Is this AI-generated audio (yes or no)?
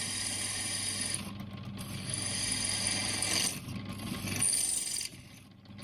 no